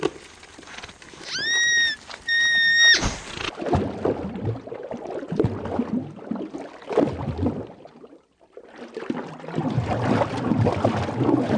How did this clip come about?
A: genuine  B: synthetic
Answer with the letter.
A